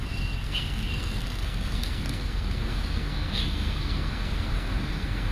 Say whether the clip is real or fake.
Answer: fake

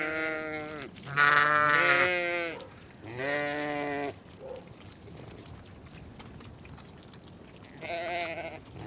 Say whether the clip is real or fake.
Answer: real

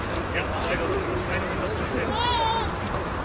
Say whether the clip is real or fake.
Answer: fake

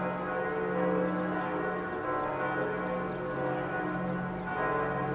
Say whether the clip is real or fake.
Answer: real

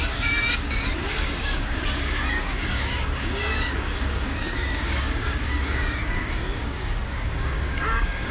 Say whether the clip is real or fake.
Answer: fake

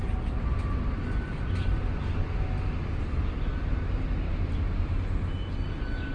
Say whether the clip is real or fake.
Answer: real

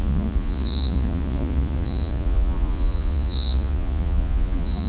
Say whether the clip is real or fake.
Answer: fake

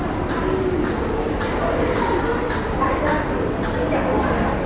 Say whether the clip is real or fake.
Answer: real